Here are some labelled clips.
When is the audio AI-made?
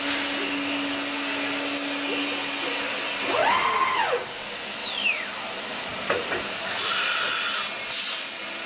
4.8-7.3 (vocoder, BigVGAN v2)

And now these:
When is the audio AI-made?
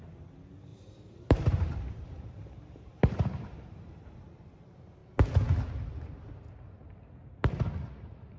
0.7-4.2 (vocoder, BigVGAN v2)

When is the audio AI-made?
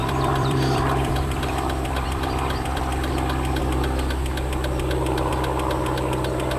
0.0-3.1 (vocoder, BigVGAN v2)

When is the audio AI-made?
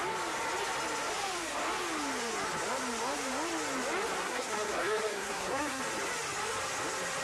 4.2-5.8 (codec, SNAC)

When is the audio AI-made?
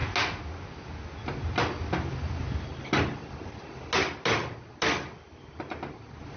none